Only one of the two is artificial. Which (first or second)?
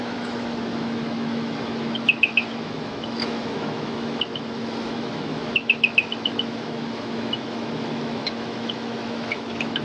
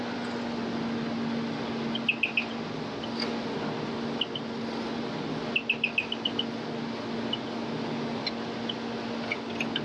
first